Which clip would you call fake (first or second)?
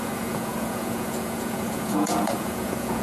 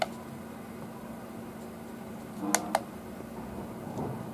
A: first